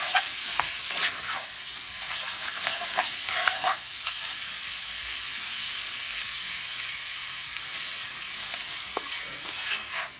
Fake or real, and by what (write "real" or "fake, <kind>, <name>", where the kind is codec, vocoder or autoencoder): fake, codec, SNAC